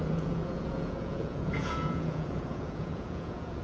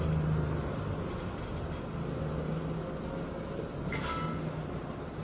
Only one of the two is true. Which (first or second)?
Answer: second